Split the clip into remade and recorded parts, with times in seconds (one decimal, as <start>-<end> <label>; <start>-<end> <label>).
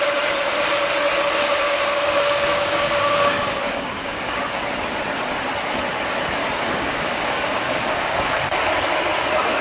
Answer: 0.0-1.4 recorded; 1.4-4.4 remade; 4.4-6.4 recorded; 6.4-8.3 remade; 8.3-9.6 recorded